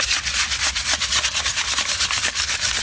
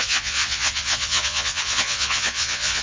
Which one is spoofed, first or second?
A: second